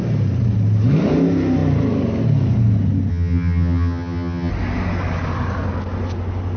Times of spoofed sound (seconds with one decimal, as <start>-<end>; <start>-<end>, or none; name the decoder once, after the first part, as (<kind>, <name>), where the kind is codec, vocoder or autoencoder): 3.1-4.5 (vocoder, HiFi-GAN)